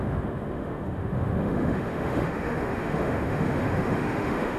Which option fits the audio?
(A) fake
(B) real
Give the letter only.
A